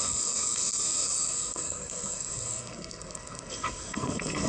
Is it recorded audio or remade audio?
remade